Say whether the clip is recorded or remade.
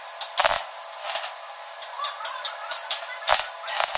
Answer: recorded